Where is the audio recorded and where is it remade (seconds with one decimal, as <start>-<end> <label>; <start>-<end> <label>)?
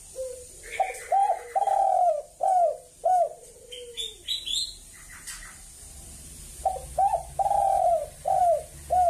0.0-1.2 recorded; 1.2-2.5 remade; 2.5-7.6 recorded; 7.6-8.4 remade; 8.4-9.1 recorded